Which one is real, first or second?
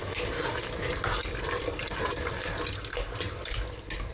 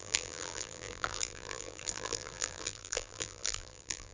first